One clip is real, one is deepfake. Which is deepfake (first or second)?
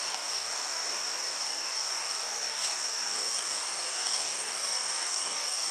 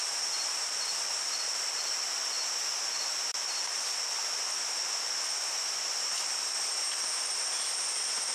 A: first